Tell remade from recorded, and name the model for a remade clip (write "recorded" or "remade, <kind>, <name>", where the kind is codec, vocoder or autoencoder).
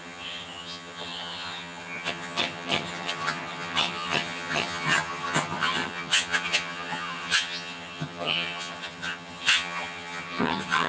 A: remade, vocoder, HiFi-GAN